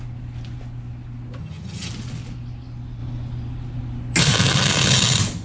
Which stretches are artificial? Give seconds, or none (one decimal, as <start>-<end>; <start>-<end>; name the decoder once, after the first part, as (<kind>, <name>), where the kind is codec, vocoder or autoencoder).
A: 1.4-1.9 (vocoder, HiFi-GAN)